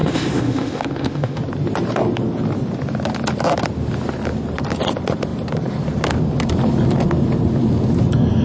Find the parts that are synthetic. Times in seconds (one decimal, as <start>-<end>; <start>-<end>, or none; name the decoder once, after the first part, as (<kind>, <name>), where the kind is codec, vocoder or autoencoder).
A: 0.0-1.4 (autoencoder, DAC-VAE)